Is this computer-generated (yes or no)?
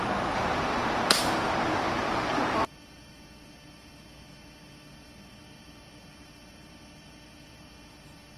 yes